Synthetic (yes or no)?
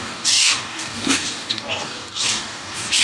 yes